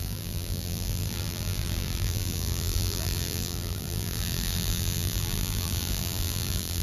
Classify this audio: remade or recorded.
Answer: remade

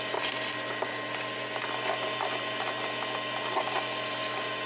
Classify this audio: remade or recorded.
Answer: recorded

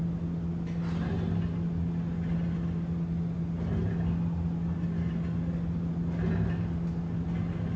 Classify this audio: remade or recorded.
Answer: recorded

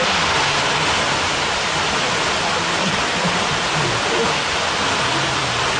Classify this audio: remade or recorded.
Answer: recorded